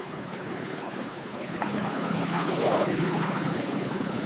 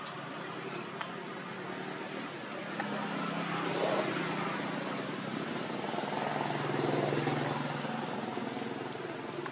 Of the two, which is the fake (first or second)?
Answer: first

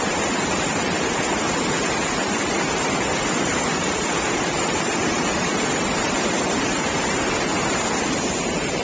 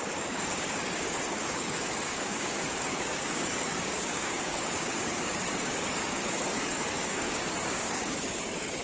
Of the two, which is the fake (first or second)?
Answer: second